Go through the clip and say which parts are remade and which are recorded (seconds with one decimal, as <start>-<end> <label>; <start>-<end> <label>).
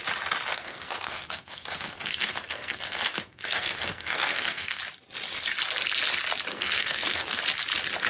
0.0-0.5 recorded; 0.5-4.8 remade; 4.8-6.5 recorded; 6.5-7.4 remade; 7.4-8.1 recorded